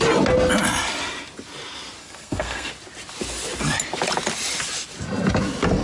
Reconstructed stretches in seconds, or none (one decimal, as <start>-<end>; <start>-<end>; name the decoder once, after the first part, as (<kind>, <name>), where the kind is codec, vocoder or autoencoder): 2.0-2.7 (codec, SNAC)